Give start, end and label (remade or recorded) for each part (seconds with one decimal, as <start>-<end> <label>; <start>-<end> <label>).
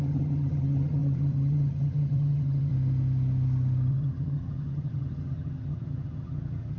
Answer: 0.0-2.7 remade; 2.7-3.9 recorded; 3.9-6.8 remade